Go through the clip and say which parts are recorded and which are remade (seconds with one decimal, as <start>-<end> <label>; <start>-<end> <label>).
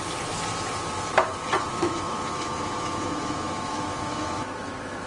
0.0-1.7 recorded; 1.7-5.1 remade